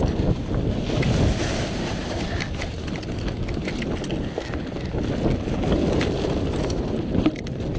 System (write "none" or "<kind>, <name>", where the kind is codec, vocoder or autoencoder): none